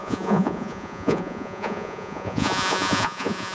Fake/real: fake